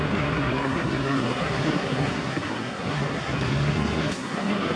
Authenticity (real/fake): fake